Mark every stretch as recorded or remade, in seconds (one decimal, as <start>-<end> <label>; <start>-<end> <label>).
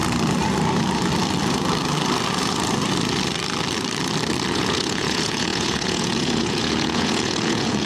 0.0-4.5 recorded; 4.5-7.9 remade